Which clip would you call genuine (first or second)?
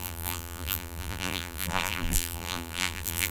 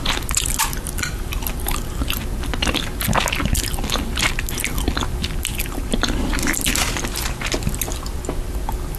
second